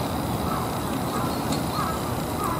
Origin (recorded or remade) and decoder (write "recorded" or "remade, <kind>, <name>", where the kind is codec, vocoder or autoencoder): recorded